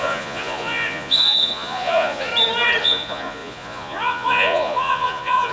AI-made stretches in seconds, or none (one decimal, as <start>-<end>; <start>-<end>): 0.0-2.3; 2.8-5.5